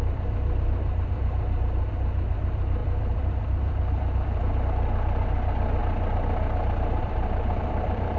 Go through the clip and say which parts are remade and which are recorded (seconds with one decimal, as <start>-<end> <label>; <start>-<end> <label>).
0.0-5.8 remade; 5.8-7.0 recorded; 7.0-8.2 remade